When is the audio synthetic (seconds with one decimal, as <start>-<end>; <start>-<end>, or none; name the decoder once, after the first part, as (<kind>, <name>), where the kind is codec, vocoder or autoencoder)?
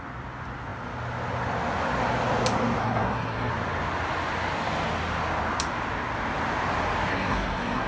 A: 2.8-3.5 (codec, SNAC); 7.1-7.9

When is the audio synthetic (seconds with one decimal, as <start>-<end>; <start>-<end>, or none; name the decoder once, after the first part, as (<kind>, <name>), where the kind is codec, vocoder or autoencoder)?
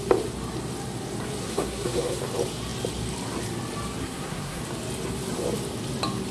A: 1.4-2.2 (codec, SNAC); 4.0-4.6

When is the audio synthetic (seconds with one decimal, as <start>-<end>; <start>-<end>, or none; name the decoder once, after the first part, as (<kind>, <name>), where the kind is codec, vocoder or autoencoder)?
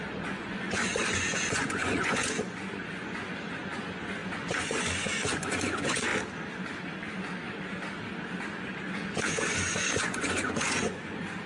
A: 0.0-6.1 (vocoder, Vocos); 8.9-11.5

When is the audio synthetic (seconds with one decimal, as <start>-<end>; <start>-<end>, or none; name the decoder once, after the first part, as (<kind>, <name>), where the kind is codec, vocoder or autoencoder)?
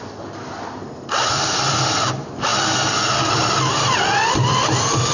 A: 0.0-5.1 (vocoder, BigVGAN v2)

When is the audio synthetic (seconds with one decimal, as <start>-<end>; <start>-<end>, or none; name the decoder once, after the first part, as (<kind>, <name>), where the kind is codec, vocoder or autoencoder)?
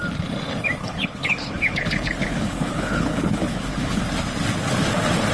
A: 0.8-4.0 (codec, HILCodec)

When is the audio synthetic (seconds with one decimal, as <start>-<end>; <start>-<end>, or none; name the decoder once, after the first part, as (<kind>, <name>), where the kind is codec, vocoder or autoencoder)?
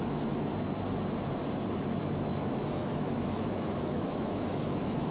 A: 0.0-0.5 (autoencoder, DAC-VAE); 2.0-5.1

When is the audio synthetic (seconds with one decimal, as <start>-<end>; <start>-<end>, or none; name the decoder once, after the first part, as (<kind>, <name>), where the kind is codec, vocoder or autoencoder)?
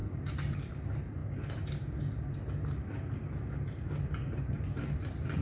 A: none